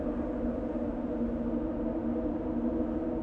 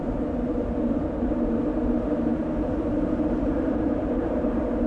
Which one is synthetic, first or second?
second